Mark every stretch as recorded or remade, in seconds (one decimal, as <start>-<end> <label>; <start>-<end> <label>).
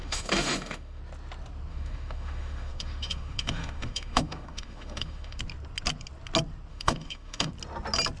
0.0-1.0 remade; 1.0-1.7 recorded; 1.7-5.4 remade; 5.4-6.7 recorded; 6.7-7.5 remade; 7.5-8.2 recorded